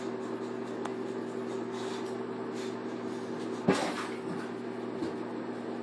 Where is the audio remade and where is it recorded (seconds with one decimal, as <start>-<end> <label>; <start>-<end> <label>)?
0.0-5.8 recorded